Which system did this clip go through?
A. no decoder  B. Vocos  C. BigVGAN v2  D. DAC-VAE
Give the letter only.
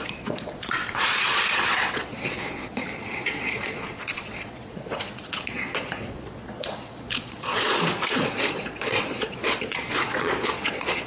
B